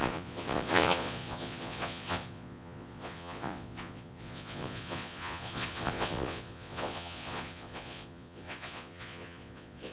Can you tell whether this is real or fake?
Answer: fake